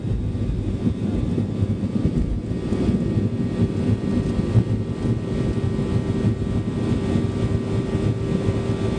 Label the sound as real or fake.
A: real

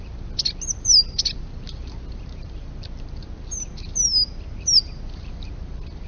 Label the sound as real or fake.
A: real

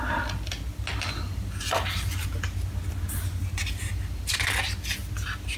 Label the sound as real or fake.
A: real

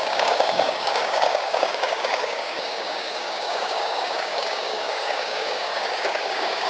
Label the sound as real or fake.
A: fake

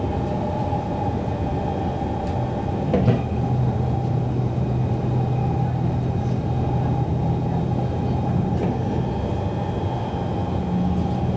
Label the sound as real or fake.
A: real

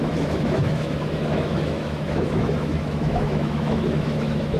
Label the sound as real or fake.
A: fake